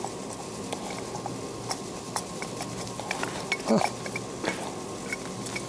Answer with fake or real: real